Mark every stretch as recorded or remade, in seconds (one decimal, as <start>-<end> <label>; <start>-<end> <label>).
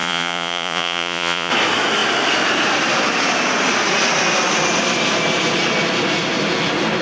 0.0-1.5 remade; 1.5-7.0 recorded